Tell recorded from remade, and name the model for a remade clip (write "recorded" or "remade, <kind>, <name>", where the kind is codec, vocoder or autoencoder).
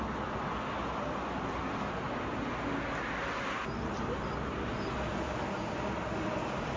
recorded